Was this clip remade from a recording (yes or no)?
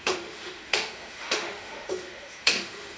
yes